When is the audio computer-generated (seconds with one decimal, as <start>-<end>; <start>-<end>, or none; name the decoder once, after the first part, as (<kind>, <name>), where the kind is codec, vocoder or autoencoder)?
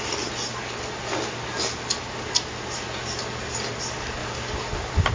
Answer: 4.2-5.1 (vocoder, BigVGAN v2)